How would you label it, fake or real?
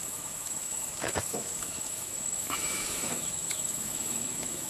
fake